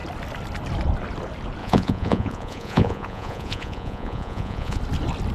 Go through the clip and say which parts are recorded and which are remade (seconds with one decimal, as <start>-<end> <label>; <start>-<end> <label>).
0.0-1.6 recorded; 1.6-4.8 remade; 4.8-5.3 recorded